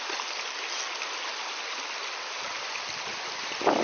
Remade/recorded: recorded